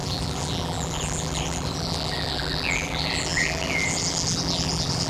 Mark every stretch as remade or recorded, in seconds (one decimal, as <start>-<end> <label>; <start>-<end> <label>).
0.0-5.1 remade